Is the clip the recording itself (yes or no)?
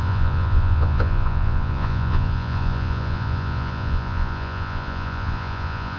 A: no